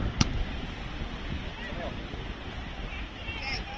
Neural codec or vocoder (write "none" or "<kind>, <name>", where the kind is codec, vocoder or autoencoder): none